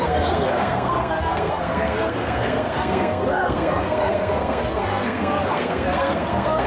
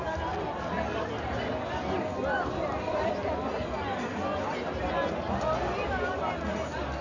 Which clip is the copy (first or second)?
first